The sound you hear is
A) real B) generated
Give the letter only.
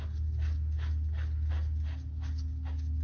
A